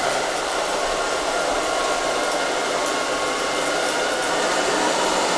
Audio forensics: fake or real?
fake